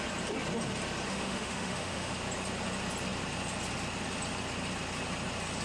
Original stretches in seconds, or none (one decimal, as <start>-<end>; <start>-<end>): 0.0-1.1; 2.1-5.6